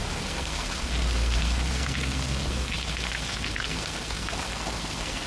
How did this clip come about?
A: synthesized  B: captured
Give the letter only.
A